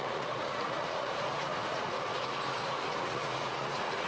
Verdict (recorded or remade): remade